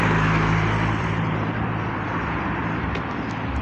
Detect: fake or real fake